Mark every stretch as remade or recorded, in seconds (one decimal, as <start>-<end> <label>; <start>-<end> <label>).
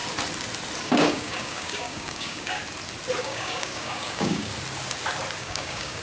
0.0-0.8 recorded; 0.8-2.6 remade; 2.6-3.2 recorded; 3.2-4.5 remade; 4.5-5.4 recorded; 5.4-6.0 remade